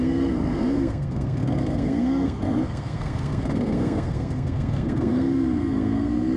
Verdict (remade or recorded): remade